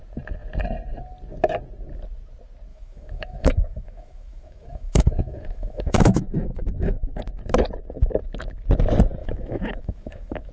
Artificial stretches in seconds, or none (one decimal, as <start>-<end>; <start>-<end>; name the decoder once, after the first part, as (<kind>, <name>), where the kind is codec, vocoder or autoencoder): 2.7-7.2 (autoencoder, DAC-VAE); 9.2-10.5